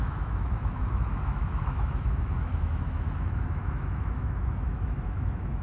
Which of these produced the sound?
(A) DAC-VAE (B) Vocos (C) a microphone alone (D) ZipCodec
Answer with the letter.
A